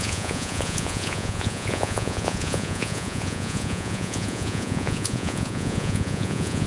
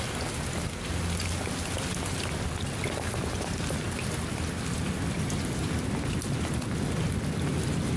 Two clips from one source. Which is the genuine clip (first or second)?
second